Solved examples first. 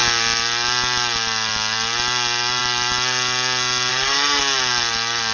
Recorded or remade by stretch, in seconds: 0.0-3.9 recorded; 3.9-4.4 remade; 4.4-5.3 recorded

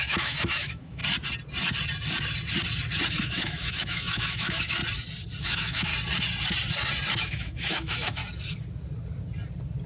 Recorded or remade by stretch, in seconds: 0.0-1.0 remade; 1.0-3.1 recorded; 3.1-4.8 remade; 4.8-5.4 recorded; 5.4-5.9 remade; 5.9-7.2 recorded; 7.2-8.2 remade; 8.2-9.9 recorded